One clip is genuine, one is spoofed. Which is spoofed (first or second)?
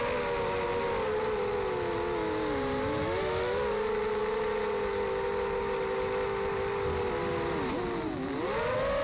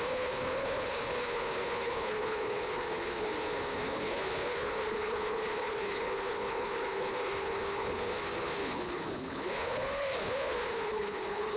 second